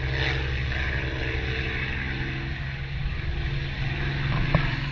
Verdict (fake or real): real